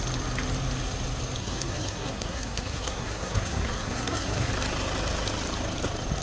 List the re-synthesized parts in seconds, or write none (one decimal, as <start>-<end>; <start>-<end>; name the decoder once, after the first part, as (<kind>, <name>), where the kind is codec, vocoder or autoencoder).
1.4-4.5 (codec, SNAC)